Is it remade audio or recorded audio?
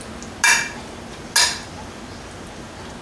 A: recorded